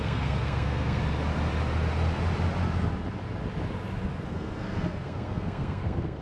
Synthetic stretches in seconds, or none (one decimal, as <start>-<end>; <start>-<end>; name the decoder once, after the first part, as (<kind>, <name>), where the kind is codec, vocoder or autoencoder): 0.0-1.0 (codec, SNAC); 4.2-6.2